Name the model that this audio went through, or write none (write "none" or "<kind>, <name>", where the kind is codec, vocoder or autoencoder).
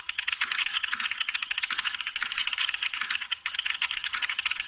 vocoder, HiFi-GAN